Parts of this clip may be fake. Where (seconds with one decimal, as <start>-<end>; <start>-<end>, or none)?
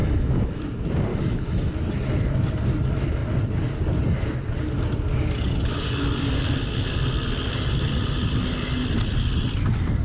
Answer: 0.0-0.6; 1.1-1.7